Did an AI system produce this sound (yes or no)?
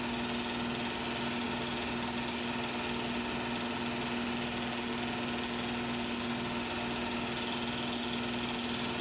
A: no